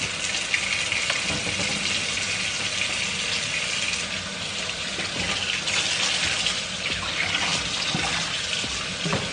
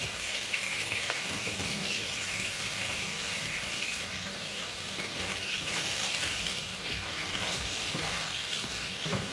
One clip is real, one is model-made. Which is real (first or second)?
first